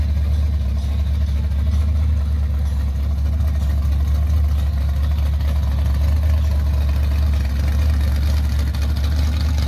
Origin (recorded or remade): recorded